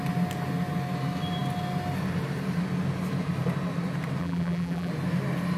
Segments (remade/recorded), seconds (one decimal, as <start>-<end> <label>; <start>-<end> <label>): 0.0-4.2 recorded; 4.2-4.9 remade; 4.9-5.6 recorded